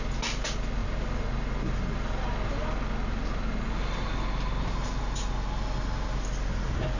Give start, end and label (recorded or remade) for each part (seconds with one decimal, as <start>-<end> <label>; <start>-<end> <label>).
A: 0.0-7.0 recorded